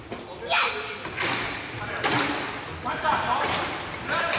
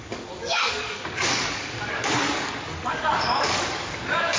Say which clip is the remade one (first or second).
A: second